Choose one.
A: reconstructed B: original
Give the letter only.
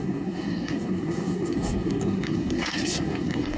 A